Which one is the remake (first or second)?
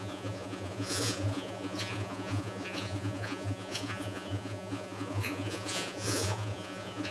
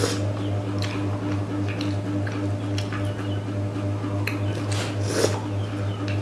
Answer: first